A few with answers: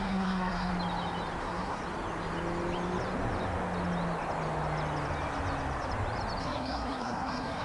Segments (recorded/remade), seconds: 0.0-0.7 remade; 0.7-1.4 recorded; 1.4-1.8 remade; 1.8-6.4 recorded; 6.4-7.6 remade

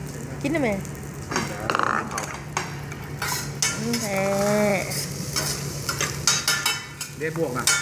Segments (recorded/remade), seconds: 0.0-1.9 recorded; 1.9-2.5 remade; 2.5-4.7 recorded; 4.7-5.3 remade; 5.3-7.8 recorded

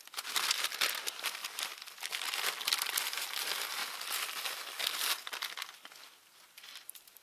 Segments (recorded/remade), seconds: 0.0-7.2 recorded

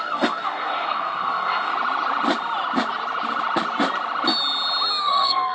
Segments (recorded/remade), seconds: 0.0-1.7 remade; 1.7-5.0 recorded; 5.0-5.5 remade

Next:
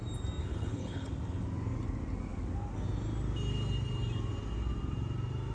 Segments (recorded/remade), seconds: 0.0-0.4 recorded; 0.4-1.1 remade; 1.1-5.5 recorded

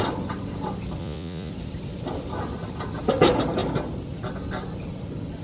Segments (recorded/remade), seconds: 0.0-1.0 recorded; 1.0-1.5 remade; 1.5-5.4 recorded